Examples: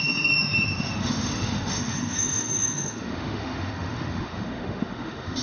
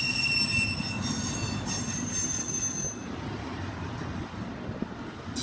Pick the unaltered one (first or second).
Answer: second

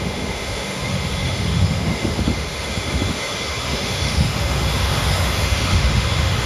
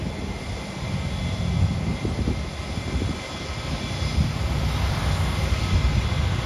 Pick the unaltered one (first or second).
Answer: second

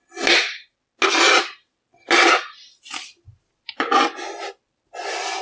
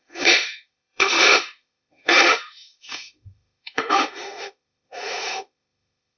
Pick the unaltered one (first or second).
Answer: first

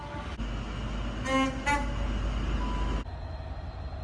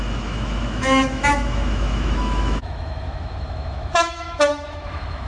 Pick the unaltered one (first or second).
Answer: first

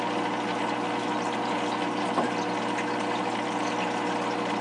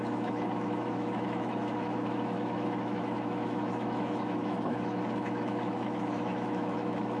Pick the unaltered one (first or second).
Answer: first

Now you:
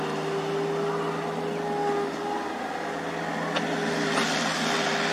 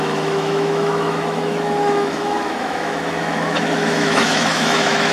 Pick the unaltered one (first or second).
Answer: first